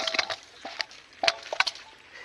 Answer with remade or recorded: recorded